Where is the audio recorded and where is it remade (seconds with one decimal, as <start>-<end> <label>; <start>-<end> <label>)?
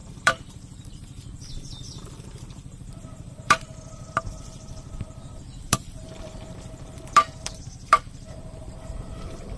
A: 0.0-9.6 remade